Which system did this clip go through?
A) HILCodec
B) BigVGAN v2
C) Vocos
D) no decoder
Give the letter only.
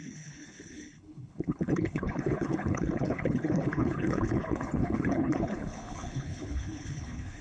A